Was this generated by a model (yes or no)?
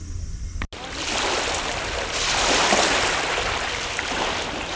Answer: no